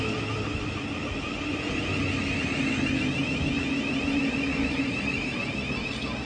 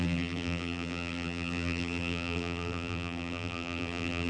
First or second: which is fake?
second